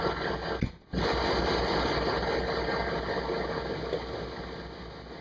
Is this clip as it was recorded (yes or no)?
yes